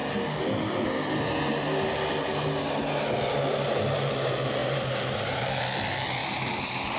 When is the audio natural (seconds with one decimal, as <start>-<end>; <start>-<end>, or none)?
0.0-4.6; 5.4-6.2